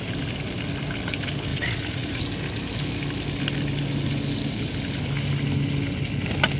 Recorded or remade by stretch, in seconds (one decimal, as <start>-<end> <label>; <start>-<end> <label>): 0.0-1.5 recorded; 1.5-2.2 remade; 2.2-6.6 recorded